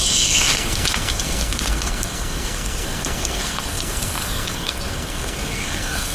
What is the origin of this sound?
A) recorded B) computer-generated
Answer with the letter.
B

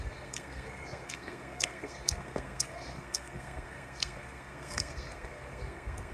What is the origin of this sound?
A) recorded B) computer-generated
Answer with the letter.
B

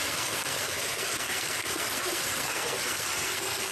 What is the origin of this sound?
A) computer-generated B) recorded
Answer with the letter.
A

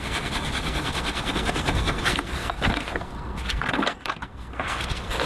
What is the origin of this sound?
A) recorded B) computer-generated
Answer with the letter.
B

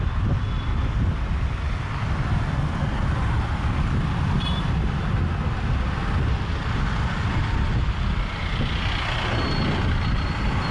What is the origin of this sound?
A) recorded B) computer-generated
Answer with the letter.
A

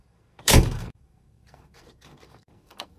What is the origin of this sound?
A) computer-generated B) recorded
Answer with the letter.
A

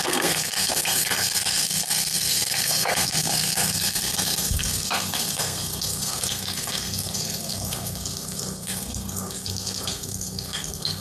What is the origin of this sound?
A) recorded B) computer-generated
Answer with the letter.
B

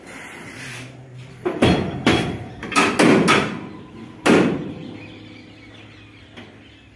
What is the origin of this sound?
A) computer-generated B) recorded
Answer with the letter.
B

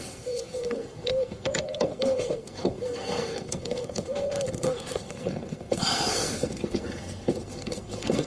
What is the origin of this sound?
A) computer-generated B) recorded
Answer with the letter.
A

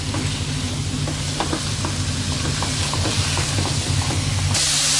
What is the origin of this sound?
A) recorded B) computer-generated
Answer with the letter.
A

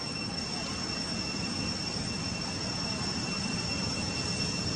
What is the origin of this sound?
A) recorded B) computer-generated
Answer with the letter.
A